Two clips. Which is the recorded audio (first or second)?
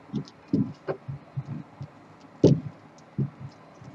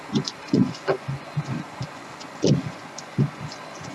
first